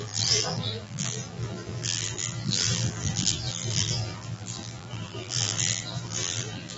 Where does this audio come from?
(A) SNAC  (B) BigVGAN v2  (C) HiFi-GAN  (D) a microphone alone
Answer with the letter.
B